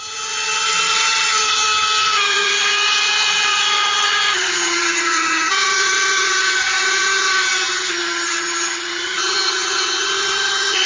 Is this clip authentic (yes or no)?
no